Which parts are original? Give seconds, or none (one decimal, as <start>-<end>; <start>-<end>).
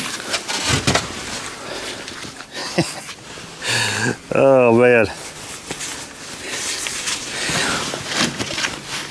0.0-9.1